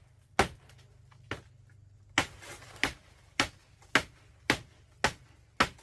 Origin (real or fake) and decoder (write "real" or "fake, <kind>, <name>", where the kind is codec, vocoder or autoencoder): real